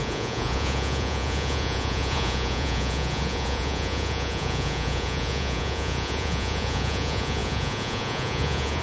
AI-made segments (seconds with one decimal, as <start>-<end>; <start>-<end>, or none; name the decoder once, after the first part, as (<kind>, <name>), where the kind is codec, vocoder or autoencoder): 0.0-8.8 (vocoder, Vocos)